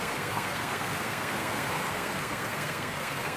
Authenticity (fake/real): fake